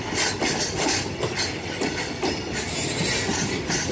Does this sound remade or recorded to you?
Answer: recorded